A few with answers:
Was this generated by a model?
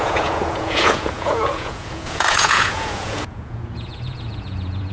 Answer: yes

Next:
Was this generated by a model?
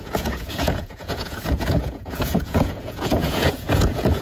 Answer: yes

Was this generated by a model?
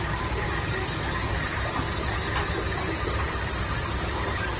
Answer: no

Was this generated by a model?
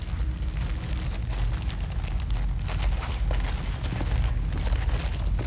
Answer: no